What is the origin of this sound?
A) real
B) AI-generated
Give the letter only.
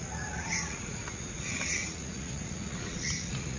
B